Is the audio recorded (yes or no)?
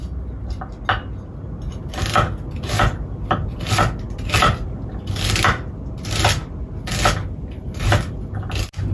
yes